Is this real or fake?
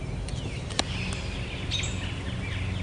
real